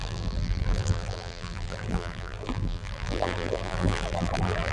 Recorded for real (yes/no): no